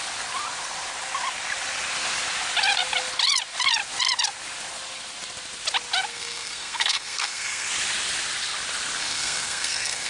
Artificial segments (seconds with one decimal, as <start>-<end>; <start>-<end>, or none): 6.1-7.7; 9.0-10.1

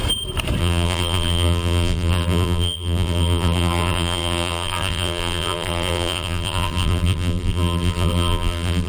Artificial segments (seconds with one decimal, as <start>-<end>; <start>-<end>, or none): 0.6-8.9

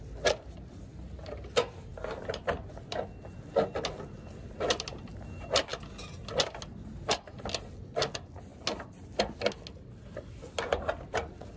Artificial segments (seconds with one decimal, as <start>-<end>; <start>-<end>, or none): none

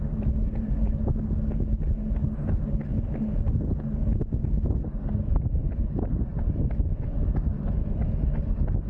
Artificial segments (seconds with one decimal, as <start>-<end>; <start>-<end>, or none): none

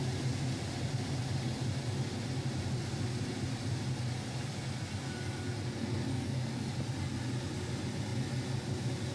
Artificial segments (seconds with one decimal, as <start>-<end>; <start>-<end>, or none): 6.1-6.7

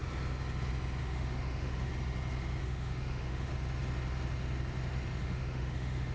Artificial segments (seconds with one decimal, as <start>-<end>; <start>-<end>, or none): 1.0-1.9; 2.6-3.5; 5.2-6.1

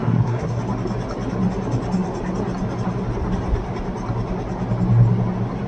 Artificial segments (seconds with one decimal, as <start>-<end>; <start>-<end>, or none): 0.0-0.6